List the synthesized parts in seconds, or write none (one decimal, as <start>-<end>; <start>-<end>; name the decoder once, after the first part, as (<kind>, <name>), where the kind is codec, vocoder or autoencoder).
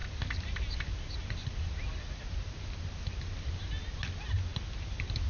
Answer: none